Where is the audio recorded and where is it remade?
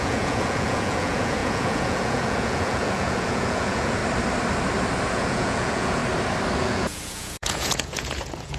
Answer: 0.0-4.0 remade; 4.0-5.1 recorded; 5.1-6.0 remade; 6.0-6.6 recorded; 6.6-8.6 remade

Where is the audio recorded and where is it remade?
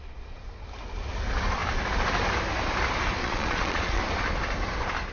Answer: 0.0-3.2 recorded; 3.2-4.0 remade; 4.0-5.1 recorded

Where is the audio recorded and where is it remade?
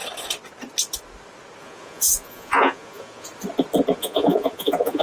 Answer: 0.0-1.6 recorded; 1.6-3.3 remade; 3.3-4.0 recorded; 4.0-5.0 remade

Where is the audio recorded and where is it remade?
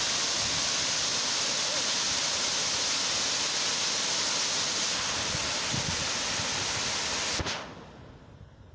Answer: 0.0-8.7 recorded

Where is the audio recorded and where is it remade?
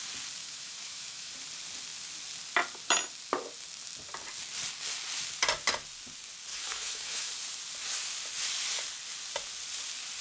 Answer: 0.0-0.4 recorded; 0.4-1.3 remade; 1.3-6.5 recorded; 6.5-7.3 remade; 7.3-10.2 recorded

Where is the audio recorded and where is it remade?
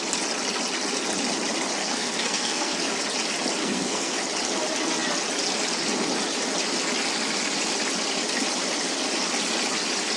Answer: 0.0-1.8 recorded; 1.8-2.9 remade; 2.9-3.6 recorded; 3.6-4.2 remade; 4.2-10.2 recorded